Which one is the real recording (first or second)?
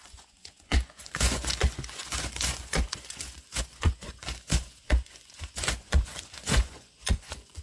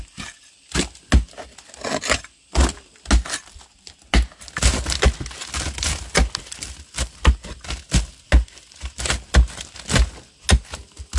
second